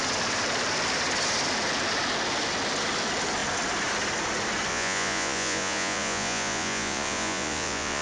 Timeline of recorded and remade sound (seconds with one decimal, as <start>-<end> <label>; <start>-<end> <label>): 0.0-4.7 recorded; 4.7-8.0 remade